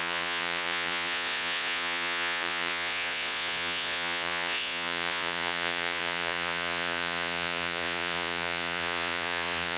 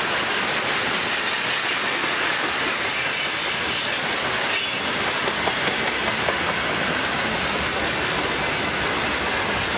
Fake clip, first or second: first